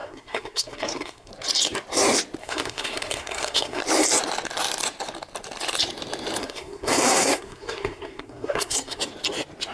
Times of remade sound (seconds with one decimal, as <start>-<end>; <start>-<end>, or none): 0.0-1.3; 2.4-3.8; 6.4-9.0